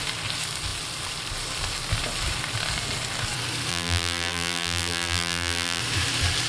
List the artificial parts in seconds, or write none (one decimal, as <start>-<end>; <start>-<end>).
3.7-5.8